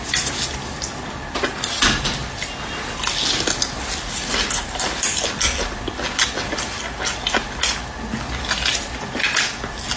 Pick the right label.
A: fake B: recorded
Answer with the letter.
B